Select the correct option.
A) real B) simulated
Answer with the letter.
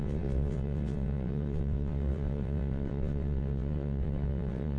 B